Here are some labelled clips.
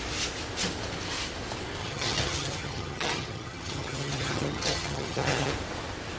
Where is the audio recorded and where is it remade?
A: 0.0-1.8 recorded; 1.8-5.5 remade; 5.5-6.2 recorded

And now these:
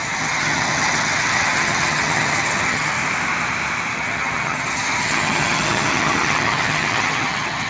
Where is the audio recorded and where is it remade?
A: 0.0-3.0 remade; 3.0-3.9 recorded; 3.9-7.7 remade

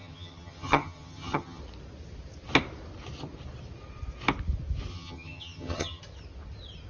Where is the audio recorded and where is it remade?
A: 0.0-1.6 remade; 1.6-4.9 recorded; 4.9-6.0 remade; 6.0-6.9 recorded

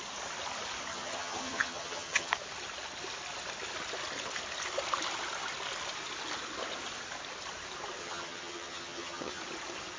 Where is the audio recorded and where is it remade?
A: 0.0-0.9 recorded; 0.9-2.3 remade; 2.3-8.0 recorded; 8.0-9.4 remade; 9.4-10.0 recorded

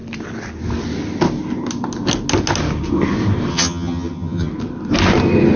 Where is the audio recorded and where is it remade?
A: 0.0-3.5 recorded; 3.5-4.5 remade; 4.5-5.6 recorded

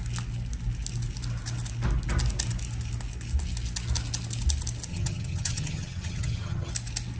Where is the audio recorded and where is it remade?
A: 0.0-4.9 recorded; 4.9-6.7 remade; 6.7-7.2 recorded